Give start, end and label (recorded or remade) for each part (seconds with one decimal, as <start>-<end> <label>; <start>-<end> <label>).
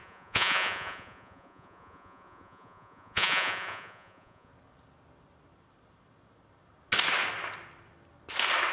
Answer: 0.0-4.5 remade; 4.5-8.7 recorded